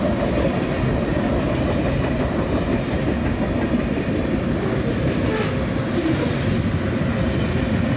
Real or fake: real